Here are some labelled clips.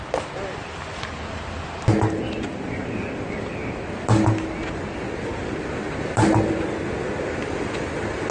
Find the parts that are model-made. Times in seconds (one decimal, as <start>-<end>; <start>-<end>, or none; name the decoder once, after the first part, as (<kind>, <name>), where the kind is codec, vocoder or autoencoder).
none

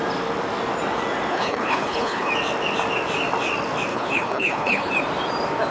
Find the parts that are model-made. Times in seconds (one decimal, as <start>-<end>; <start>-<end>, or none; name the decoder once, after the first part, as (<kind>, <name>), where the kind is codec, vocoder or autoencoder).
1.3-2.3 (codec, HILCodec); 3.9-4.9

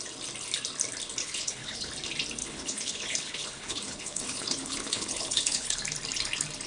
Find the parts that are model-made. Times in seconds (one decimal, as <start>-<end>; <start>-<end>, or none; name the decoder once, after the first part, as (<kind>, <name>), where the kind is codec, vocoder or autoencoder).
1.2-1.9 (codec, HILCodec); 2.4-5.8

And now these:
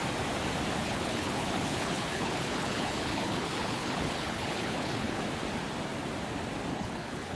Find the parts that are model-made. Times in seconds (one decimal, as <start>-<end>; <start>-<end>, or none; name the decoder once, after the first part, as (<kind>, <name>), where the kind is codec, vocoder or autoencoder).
0.8-5.2 (codec, HILCodec); 6.7-7.4

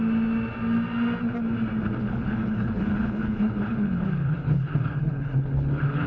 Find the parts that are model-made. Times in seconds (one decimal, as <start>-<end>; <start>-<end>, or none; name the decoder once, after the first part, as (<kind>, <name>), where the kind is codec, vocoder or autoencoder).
2.0-6.1 (codec, HILCodec)

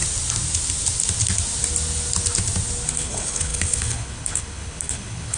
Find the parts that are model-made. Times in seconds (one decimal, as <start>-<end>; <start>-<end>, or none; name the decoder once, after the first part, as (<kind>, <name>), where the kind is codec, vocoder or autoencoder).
2.9-5.4 (codec, HILCodec)

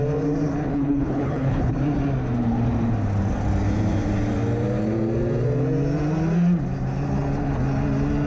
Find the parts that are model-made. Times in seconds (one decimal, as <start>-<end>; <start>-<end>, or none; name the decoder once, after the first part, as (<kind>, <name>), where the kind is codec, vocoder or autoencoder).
0.7-1.7 (codec, HILCodec)